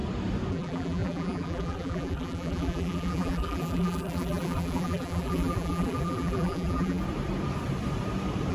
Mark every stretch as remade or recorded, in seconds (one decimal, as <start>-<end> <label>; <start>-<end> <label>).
0.0-0.5 recorded; 0.5-7.0 remade; 7.0-8.5 recorded

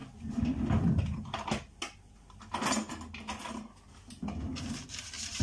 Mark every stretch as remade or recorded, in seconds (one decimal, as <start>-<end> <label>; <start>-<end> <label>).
0.0-5.4 recorded

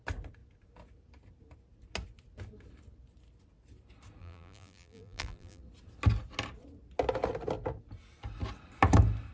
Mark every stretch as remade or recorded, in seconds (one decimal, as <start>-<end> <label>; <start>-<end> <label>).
0.0-4.2 recorded; 4.2-5.6 remade; 5.6-9.3 recorded